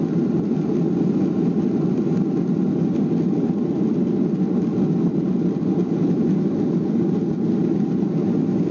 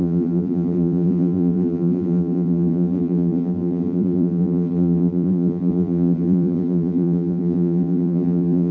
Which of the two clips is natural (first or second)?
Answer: first